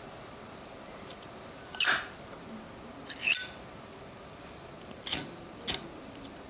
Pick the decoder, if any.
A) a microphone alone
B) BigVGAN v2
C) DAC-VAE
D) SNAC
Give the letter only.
A